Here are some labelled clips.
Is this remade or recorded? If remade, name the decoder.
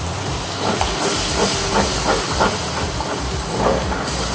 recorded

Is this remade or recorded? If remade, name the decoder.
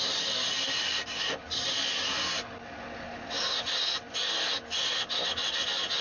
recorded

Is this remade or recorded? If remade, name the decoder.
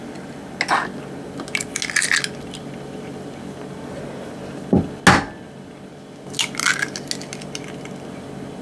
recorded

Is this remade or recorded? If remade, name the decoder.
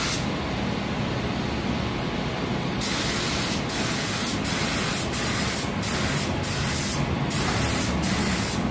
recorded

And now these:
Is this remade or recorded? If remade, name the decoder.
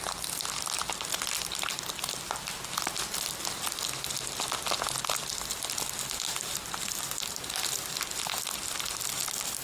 recorded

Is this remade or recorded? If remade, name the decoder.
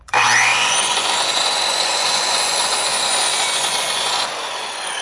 remade, vocoder, Vocos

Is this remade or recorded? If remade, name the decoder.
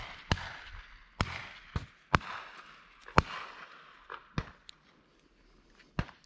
recorded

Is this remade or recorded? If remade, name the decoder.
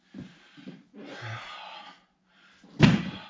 recorded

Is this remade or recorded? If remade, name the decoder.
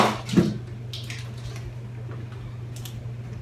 recorded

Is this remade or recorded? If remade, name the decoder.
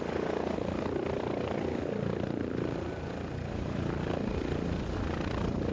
recorded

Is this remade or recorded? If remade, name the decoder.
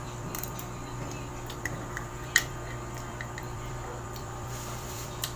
remade, vocoder, BigVGAN v2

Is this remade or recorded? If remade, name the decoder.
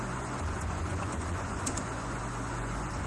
remade, vocoder, Vocos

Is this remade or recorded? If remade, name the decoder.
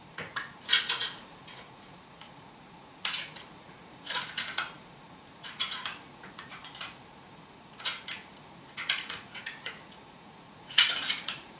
remade, vocoder, Vocos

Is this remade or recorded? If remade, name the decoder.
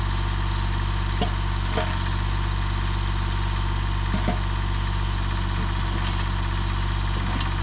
recorded